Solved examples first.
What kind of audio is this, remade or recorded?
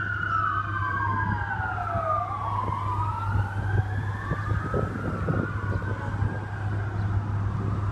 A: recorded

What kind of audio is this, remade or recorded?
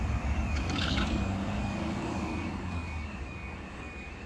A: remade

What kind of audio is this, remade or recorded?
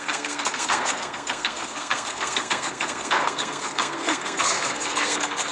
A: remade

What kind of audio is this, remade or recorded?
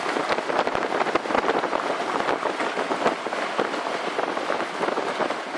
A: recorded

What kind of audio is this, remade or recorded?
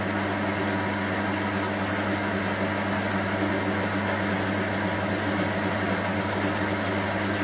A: recorded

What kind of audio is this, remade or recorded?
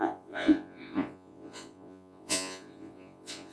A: remade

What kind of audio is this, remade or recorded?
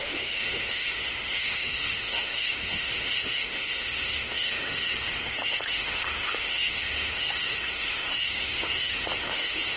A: remade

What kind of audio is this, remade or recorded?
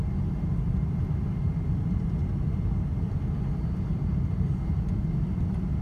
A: recorded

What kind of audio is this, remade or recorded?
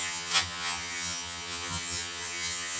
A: remade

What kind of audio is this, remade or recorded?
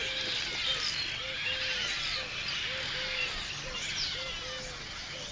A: recorded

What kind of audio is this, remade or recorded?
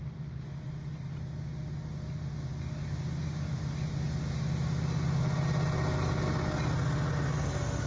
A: recorded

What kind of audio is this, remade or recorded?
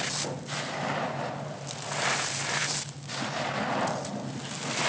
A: recorded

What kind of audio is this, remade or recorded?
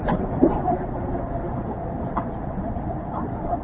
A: recorded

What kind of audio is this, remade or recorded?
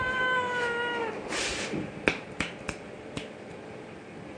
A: recorded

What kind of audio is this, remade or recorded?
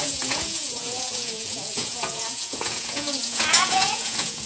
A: remade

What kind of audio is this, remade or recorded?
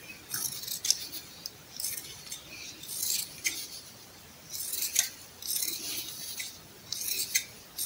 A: recorded